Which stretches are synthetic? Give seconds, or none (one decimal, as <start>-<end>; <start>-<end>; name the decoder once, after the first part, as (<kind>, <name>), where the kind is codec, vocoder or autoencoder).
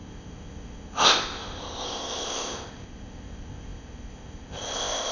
0.0-5.1 (codec, ZipCodec)